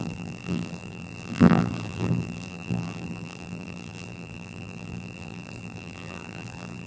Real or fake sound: fake